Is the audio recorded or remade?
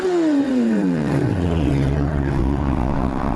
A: remade